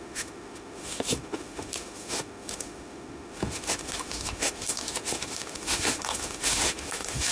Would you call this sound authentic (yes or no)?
no